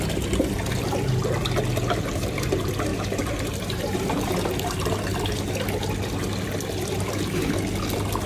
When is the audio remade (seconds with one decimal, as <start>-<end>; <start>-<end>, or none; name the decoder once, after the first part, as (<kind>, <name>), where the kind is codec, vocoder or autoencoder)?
2.9-4.3 (vocoder, BigVGAN v2)